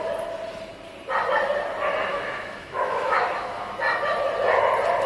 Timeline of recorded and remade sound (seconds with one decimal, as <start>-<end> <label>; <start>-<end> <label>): 0.0-2.1 recorded; 2.1-3.7 remade; 3.7-5.1 recorded